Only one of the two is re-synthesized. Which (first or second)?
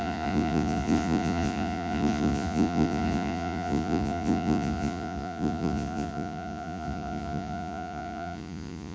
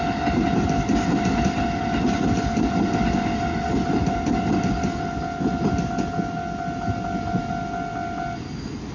first